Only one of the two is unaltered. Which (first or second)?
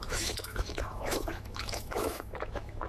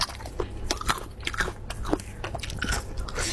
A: second